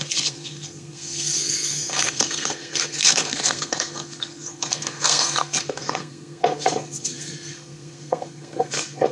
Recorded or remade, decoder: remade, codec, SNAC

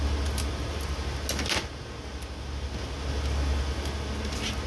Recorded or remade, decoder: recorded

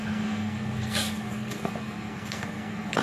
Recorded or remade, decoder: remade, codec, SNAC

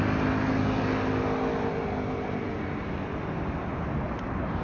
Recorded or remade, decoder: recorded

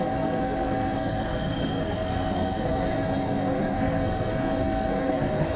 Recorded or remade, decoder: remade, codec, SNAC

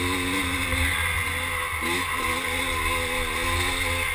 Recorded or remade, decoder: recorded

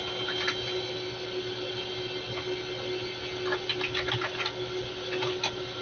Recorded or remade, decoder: recorded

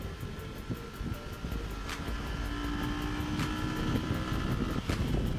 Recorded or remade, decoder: recorded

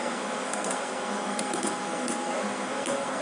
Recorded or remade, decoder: remade, codec, SNAC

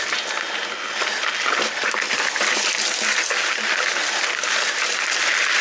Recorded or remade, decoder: recorded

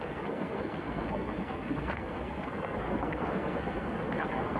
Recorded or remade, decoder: remade, codec, SNAC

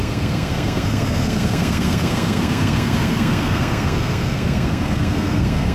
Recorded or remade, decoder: remade, codec, SNAC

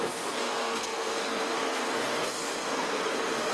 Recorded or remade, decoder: remade, codec, SNAC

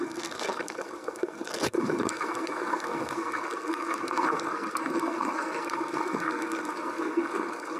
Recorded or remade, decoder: remade, codec, SNAC